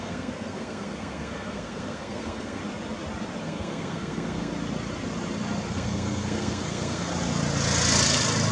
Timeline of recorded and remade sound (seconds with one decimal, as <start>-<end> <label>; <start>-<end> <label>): 0.0-2.6 remade; 2.6-3.4 recorded; 3.4-4.5 remade; 4.5-5.7 recorded; 5.7-7.1 remade; 7.1-8.5 recorded

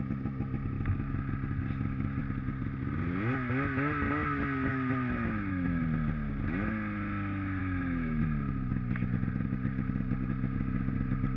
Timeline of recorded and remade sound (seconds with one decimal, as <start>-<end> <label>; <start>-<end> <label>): 0.0-4.7 recorded; 4.7-5.8 remade; 5.8-7.6 recorded; 7.6-8.2 remade; 8.2-11.4 recorded

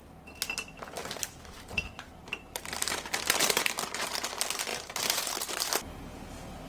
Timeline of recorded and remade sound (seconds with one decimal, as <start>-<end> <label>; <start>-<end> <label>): 0.0-1.0 recorded; 1.0-2.9 remade; 2.9-4.7 recorded; 4.7-5.7 remade; 5.7-6.7 recorded

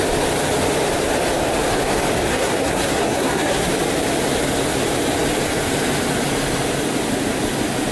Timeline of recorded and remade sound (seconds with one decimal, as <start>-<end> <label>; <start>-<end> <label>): 0.0-2.3 recorded; 2.3-3.7 remade; 3.7-7.9 recorded